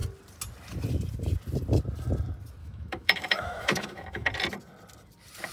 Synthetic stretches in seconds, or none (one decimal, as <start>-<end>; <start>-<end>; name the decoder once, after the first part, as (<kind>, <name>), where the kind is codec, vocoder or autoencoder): 2.6-4.3 (autoencoder, DAC-VAE)